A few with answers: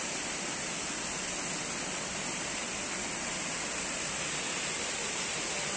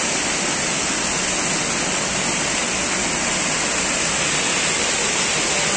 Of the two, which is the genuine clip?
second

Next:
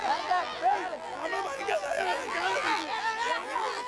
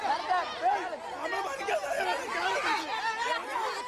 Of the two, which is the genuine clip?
second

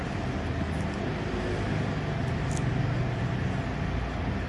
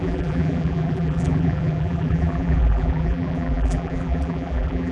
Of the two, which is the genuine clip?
first